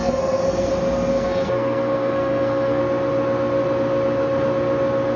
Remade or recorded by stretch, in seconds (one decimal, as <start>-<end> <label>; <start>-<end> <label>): 0.0-0.7 remade; 0.7-1.1 recorded; 1.1-2.8 remade; 2.8-5.2 recorded